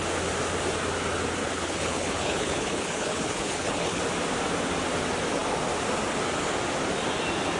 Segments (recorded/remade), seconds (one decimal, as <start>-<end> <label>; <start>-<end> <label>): 0.0-1.4 recorded; 1.4-4.0 remade; 4.0-7.6 recorded